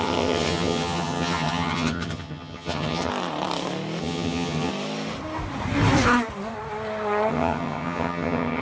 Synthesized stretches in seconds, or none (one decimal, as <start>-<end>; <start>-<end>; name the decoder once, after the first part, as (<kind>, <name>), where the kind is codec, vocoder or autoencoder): 0.0-3.1 (vocoder, HiFi-GAN); 4.0-4.7; 7.3-8.6